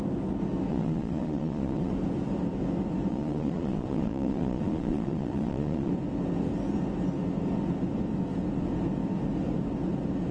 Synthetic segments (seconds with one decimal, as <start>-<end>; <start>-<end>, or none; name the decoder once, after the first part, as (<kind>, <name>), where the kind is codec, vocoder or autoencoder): 0.7-1.9 (vocoder, Vocos); 3.1-5.9